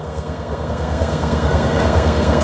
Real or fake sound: fake